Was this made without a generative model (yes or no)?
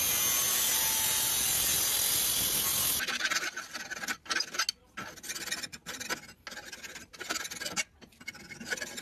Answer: yes